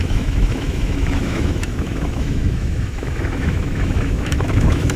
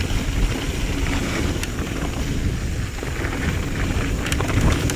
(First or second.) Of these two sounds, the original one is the second